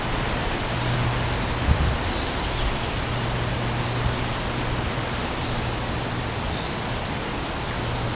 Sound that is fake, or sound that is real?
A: real